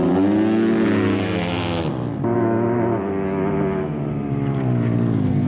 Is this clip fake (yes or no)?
no